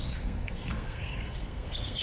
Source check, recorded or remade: remade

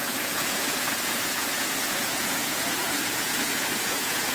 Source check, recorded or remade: remade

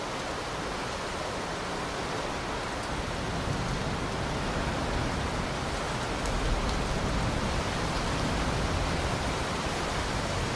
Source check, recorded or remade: recorded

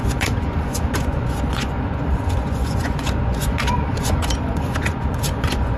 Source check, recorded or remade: remade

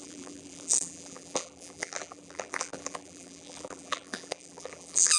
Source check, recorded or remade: remade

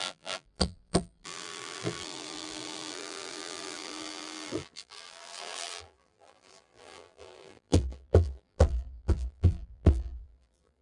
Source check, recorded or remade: remade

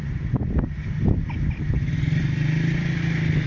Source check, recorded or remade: recorded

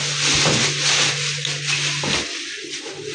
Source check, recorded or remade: recorded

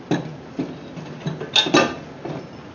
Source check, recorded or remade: recorded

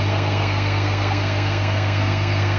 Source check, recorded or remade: remade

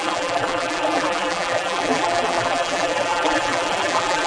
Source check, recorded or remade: remade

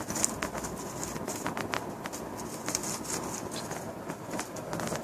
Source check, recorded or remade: recorded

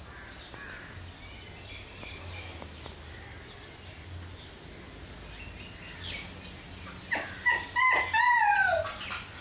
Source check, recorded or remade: recorded